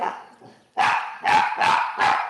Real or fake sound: fake